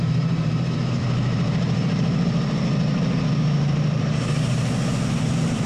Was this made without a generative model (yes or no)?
no